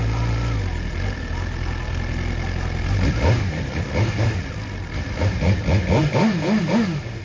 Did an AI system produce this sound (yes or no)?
no